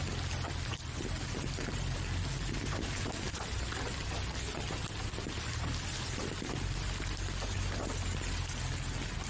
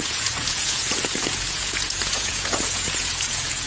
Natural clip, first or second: first